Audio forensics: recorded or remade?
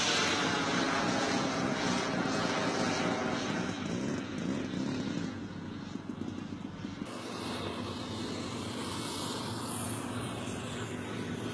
recorded